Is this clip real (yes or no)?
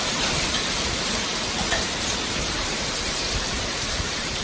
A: no